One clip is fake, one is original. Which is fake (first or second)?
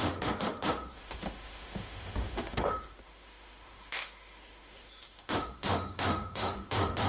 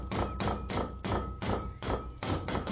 first